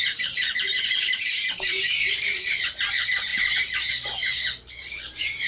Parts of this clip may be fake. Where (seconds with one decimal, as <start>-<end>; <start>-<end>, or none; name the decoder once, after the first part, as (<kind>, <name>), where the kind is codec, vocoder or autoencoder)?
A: 0.0-5.5 (vocoder, BigVGAN v2)